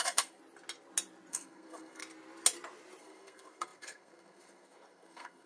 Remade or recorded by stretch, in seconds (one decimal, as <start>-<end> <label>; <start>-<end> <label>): 0.0-0.4 remade; 0.4-1.3 recorded; 1.3-2.0 remade; 2.0-3.0 recorded; 3.0-5.5 remade